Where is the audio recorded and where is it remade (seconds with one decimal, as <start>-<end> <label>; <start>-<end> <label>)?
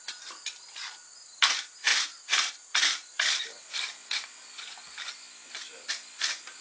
0.0-6.6 recorded